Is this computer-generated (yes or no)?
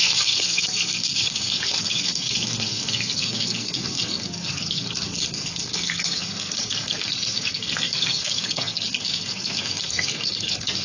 yes